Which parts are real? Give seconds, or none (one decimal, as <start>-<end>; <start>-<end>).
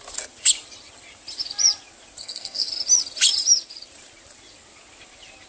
0.0-2.2; 2.7-5.5